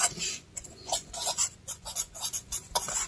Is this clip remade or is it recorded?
remade